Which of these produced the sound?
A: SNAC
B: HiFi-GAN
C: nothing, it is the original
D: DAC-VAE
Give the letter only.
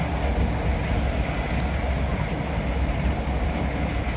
C